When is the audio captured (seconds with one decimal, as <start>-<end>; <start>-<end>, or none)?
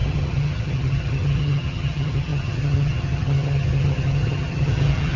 none